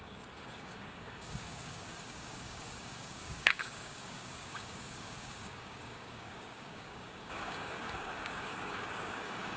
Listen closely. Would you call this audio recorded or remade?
remade